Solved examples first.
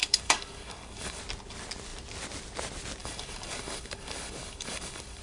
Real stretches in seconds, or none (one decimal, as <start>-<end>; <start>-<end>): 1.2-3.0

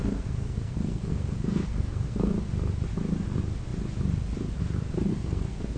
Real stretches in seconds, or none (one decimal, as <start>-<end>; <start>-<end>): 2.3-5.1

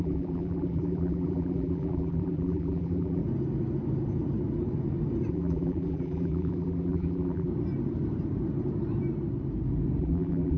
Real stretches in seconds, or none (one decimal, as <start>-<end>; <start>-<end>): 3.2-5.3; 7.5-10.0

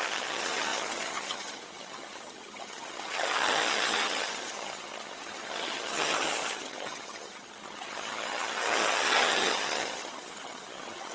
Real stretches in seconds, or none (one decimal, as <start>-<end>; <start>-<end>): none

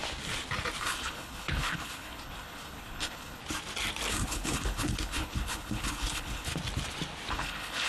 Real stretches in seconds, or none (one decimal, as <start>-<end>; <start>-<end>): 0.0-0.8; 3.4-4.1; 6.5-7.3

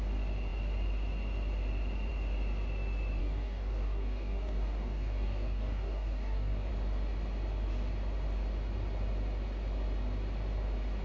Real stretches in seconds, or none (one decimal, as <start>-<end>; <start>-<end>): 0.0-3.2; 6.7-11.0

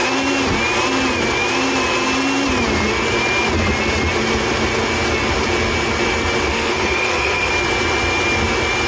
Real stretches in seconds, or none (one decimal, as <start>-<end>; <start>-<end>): 0.0-6.5; 7.5-8.9